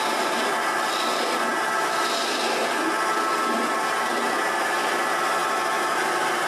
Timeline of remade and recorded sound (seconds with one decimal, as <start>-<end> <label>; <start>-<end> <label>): 0.0-6.5 recorded